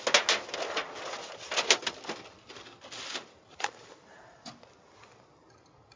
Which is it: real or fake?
real